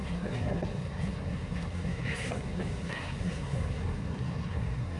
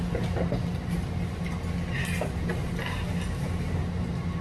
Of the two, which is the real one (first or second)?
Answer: second